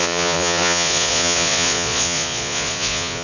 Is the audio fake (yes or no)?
yes